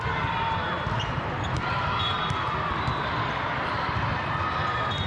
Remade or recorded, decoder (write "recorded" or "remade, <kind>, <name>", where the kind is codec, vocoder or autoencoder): recorded